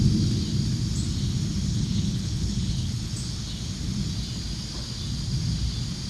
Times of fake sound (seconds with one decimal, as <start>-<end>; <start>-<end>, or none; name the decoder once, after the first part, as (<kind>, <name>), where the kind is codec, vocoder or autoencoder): 1.7-3.1 (codec, HILCodec)